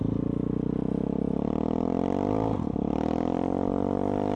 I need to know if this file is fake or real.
real